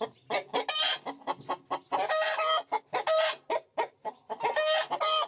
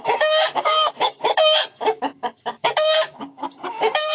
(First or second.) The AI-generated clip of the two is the second